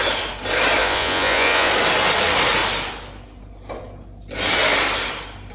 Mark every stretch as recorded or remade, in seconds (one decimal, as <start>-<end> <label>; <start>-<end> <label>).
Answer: 0.0-0.8 recorded; 0.8-1.7 remade; 1.7-5.5 recorded